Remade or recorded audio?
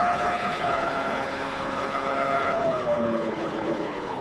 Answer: remade